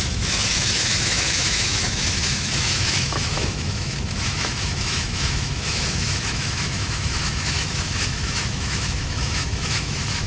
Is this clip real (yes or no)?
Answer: no